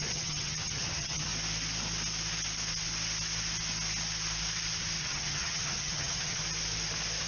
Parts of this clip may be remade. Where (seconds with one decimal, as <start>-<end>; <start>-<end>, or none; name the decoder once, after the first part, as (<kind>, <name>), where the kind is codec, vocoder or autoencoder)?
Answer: 0.0-1.3 (vocoder, HiFi-GAN); 5.0-6.4